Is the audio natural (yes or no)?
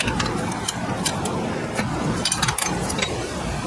yes